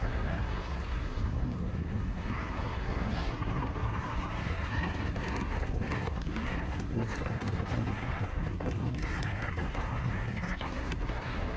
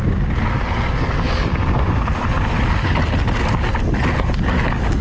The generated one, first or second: first